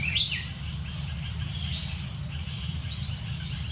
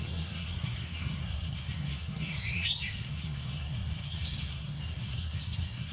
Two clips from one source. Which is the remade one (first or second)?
second